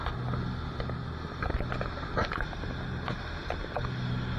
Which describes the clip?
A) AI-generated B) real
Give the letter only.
B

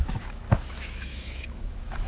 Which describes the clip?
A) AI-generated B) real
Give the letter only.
A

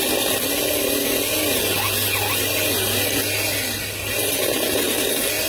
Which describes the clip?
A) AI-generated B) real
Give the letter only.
B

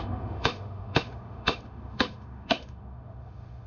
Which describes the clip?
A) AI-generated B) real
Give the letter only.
A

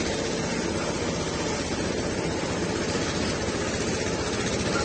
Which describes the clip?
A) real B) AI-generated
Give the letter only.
A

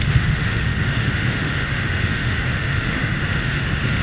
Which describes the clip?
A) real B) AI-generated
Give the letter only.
B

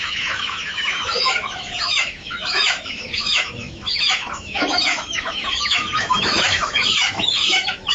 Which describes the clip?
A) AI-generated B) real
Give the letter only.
A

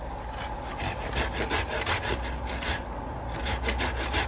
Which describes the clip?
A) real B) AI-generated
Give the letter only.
A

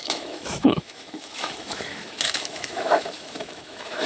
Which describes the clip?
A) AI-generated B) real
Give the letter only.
A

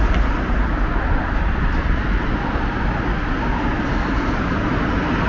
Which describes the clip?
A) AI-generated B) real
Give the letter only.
B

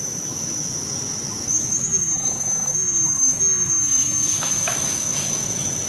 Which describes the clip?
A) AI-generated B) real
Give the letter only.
A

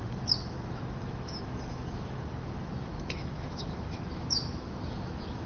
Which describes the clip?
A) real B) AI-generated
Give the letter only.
B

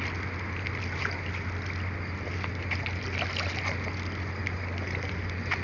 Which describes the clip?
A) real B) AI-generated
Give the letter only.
A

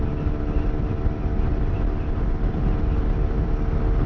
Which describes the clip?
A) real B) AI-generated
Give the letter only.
A